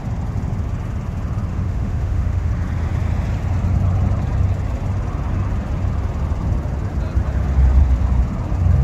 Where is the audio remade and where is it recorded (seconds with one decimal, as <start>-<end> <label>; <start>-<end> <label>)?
0.0-1.5 recorded; 1.5-2.5 remade; 2.5-8.8 recorded